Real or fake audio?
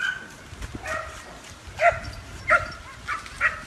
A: real